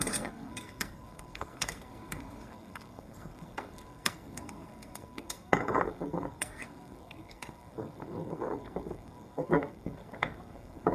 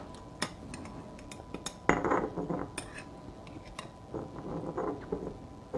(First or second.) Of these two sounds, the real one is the second